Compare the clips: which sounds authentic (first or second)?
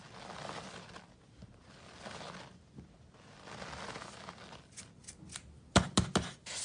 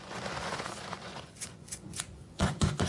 first